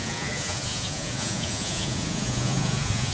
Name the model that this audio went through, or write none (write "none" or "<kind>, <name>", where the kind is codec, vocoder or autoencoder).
vocoder, Vocos